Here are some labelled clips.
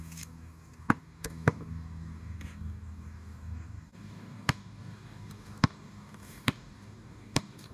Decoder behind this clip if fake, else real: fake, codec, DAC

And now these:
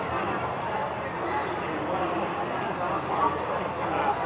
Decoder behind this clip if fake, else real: real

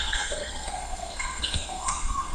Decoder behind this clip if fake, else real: fake, codec, SNAC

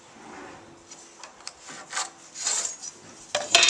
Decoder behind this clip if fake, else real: real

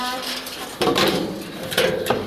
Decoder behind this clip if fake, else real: fake, vocoder, BigVGAN v2